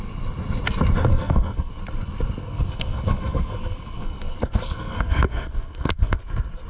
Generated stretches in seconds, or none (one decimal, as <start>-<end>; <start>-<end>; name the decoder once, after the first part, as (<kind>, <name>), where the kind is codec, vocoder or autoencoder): 1.1-1.7 (codec, SNAC); 2.4-6.2